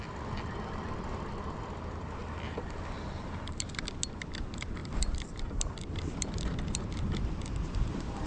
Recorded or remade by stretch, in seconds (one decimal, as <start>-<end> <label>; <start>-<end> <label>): 0.0-2.2 recorded; 2.2-3.8 remade; 3.8-4.8 recorded; 4.8-5.8 remade; 5.8-8.3 recorded